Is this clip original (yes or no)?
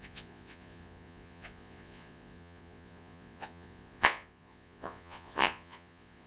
no